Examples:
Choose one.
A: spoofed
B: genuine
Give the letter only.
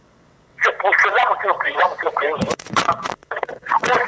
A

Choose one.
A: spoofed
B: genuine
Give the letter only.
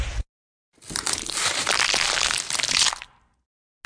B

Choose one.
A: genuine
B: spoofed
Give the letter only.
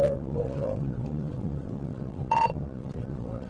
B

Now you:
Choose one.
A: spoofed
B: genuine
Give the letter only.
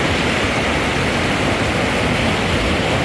B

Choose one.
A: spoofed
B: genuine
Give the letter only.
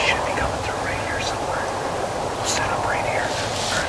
B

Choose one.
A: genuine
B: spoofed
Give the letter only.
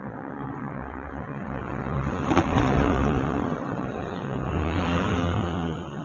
B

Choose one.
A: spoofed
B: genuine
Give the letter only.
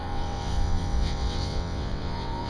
A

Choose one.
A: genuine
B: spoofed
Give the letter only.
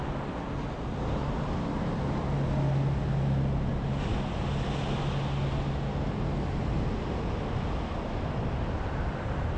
A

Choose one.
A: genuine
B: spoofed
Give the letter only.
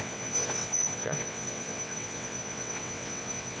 B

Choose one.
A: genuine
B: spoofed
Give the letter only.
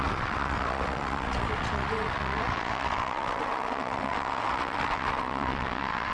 B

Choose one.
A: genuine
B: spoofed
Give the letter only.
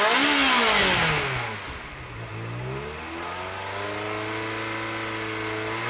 A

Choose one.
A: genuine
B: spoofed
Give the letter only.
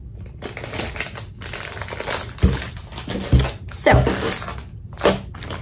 A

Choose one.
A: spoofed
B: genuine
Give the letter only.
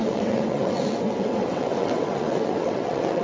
A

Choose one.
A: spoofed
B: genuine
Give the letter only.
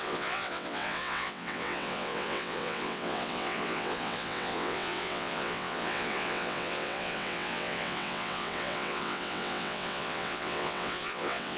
A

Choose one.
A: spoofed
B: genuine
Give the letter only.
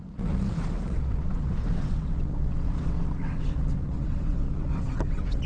A